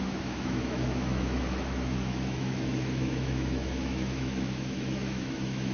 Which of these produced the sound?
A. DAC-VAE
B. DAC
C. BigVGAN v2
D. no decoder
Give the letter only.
A